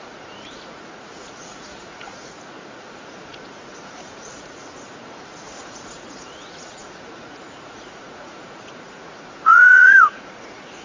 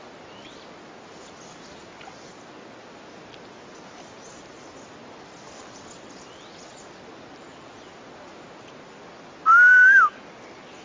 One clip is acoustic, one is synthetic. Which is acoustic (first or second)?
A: second